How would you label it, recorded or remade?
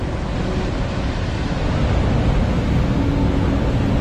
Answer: recorded